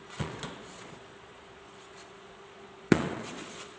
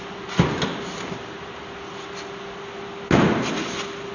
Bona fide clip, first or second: second